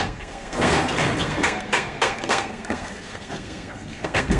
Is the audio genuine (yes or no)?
no